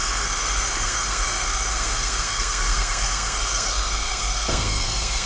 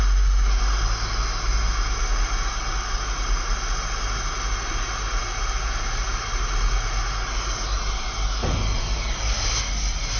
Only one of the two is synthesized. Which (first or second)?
first